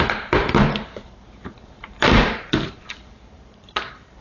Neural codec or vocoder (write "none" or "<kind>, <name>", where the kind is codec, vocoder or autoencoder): vocoder, BigVGAN v2